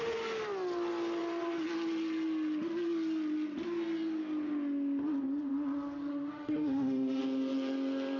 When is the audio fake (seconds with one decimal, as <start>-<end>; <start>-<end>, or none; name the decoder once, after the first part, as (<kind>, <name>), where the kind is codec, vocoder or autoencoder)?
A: 6.1-7.2 (autoencoder, DAC-VAE)